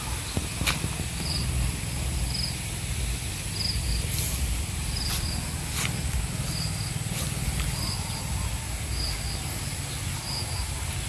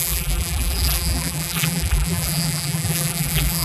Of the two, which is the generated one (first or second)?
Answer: second